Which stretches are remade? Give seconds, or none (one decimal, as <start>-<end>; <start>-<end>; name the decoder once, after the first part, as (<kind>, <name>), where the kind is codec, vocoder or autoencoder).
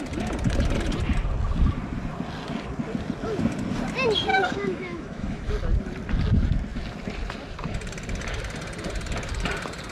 4.3-5.5 (autoencoder, DAC-VAE)